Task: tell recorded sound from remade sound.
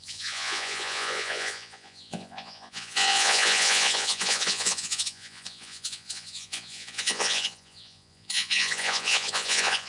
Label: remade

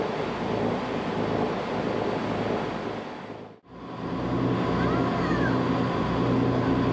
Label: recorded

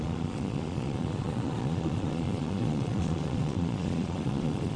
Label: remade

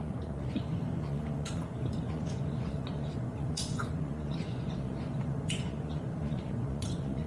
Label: remade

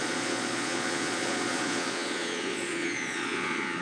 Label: remade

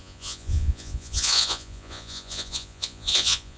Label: remade